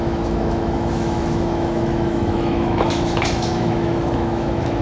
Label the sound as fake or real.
fake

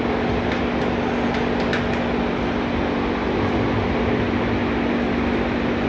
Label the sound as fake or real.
real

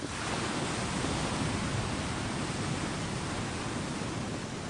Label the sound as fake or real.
real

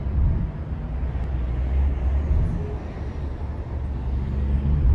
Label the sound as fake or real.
real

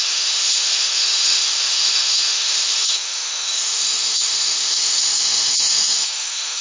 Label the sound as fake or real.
fake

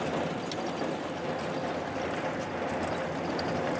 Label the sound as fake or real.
real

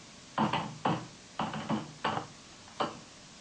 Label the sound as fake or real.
real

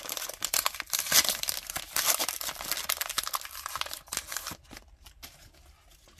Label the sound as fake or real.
real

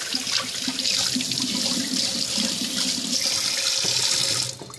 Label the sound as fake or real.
real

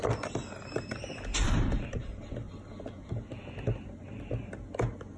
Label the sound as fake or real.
real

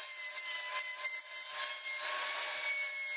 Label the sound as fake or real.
real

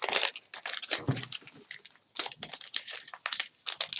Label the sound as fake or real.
real